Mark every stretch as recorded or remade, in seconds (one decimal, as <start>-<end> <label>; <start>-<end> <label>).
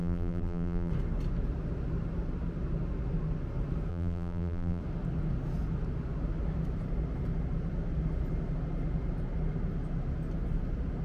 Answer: 0.0-0.9 remade; 0.9-3.9 recorded; 3.9-4.8 remade; 4.8-11.0 recorded